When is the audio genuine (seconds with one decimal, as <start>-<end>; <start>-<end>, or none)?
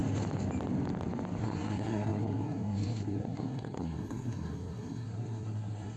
0.0-1.4